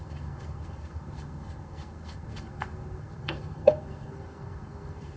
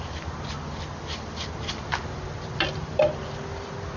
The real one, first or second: second